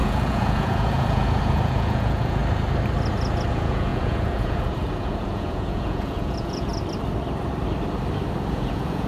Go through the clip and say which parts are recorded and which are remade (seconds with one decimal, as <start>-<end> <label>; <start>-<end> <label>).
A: 0.0-2.4 remade; 2.4-3.5 recorded; 3.5-6.7 remade; 6.7-8.5 recorded; 8.5-9.1 remade